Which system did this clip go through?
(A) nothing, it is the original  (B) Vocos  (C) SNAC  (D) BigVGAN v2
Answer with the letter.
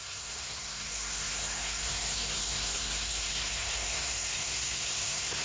C